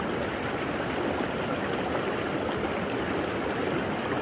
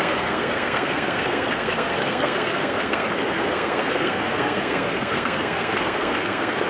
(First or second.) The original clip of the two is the first